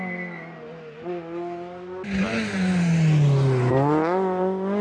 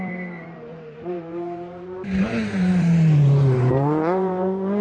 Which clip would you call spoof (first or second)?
second